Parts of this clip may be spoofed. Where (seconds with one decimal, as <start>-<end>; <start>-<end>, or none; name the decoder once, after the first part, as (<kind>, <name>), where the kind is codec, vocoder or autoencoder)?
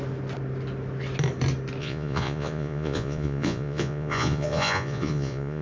1.8-5.6 (vocoder, Vocos)